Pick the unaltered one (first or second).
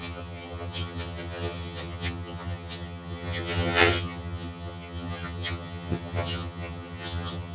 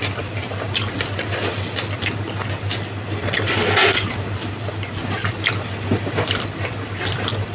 second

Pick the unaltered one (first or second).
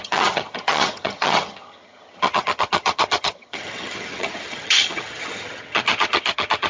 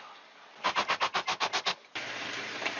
second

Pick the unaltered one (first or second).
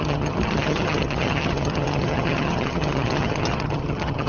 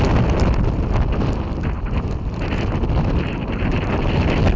second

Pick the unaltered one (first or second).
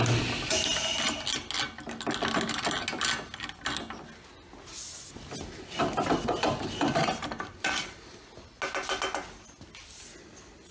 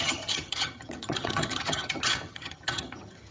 first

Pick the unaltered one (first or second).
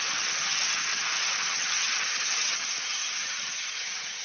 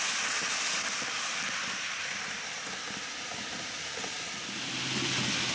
second